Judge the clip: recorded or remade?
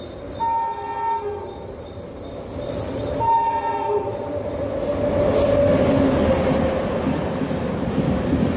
recorded